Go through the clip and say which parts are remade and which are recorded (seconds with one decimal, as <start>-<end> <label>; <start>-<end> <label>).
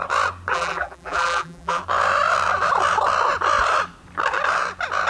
0.0-0.5 recorded; 0.5-1.8 remade; 1.8-5.1 recorded